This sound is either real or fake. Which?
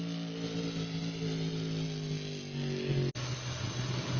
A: real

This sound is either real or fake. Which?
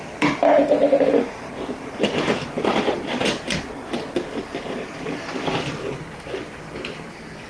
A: real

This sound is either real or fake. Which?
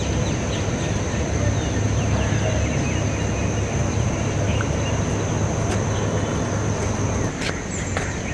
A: real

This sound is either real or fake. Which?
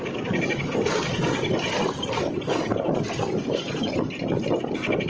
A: fake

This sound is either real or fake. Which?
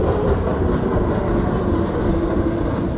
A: real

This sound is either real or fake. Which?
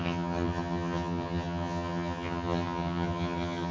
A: fake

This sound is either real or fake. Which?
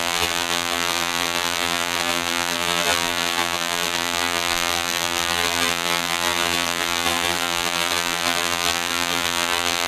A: fake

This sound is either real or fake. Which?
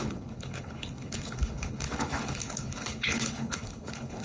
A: fake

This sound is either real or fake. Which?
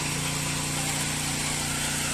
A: real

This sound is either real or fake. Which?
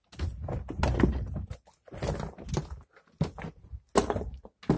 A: real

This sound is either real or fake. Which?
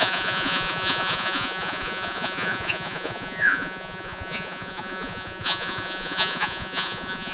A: fake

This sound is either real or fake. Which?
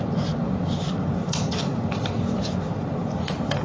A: real